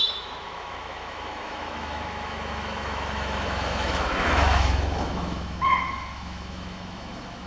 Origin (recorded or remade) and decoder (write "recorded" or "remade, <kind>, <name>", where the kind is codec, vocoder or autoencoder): remade, autoencoder, DAC-VAE